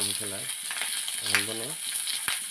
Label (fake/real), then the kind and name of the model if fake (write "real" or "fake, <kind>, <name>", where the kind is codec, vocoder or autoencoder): real